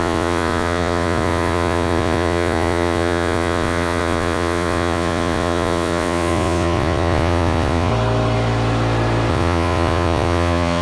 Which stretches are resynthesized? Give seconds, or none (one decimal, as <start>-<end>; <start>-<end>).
0.0-7.9; 9.3-10.8